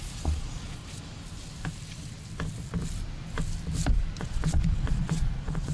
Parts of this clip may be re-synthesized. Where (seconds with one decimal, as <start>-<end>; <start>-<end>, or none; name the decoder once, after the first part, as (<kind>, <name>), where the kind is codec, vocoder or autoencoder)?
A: 0.0-0.8 (vocoder, Vocos); 4.2-5.7